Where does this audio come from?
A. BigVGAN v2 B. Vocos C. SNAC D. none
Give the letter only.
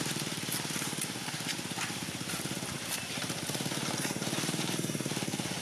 A